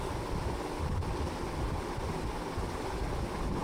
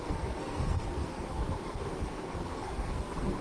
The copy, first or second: second